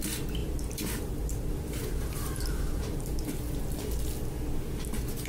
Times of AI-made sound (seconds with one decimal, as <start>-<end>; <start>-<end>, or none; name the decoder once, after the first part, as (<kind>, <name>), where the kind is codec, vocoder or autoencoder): 0.4-3.6 (vocoder, BigVGAN v2)